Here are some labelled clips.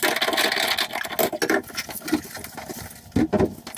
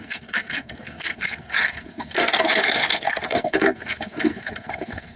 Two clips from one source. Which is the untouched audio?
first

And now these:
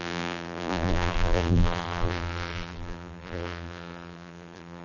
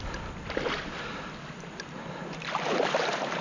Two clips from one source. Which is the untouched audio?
second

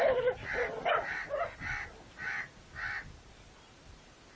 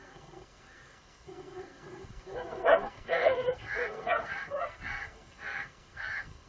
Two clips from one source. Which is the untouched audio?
first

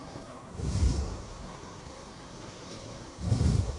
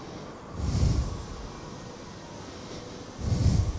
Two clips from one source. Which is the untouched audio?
second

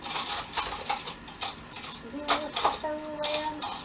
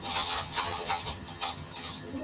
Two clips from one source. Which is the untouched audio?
first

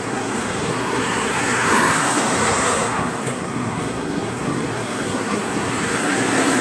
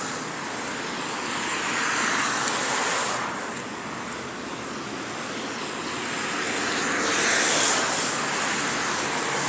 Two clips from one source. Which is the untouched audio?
second